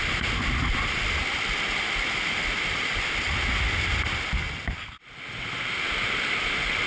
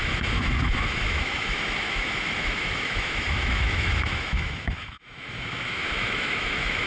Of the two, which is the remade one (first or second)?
second